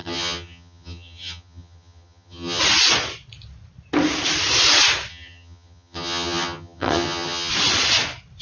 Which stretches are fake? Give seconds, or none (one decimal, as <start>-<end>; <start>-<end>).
0.0-2.6; 5.1-7.5